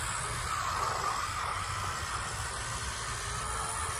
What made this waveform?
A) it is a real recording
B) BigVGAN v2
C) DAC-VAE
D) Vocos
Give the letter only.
A